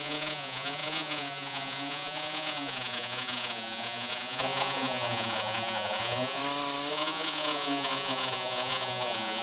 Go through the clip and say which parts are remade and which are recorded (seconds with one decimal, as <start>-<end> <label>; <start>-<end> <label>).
0.0-6.4 remade; 6.4-6.9 recorded; 6.9-9.4 remade